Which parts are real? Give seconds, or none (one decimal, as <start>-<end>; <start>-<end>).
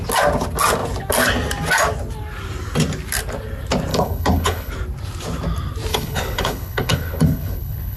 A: 0.0-3.9; 4.7-5.9